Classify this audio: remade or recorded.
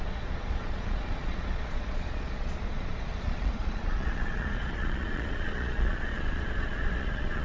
remade